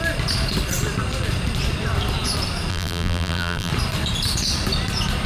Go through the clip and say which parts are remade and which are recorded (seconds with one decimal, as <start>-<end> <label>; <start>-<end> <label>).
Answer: 0.0-2.7 recorded; 2.7-3.7 remade; 3.7-5.3 recorded